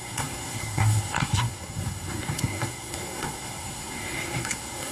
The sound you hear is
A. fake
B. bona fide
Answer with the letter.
A